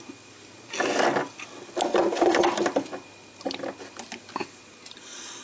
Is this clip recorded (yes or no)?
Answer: yes